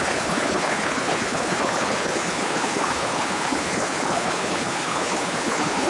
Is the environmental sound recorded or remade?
remade